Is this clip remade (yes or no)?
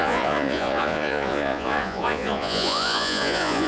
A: yes